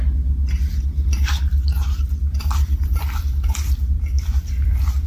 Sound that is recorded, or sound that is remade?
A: recorded